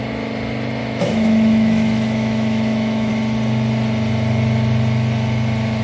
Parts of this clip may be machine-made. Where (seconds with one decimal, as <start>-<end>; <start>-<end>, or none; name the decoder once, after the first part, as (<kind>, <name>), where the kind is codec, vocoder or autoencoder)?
0.8-3.1 (autoencoder, DAC-VAE)